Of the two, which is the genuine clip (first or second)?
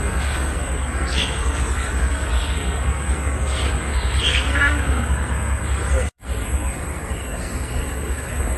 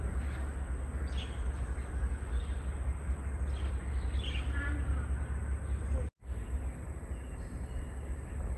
second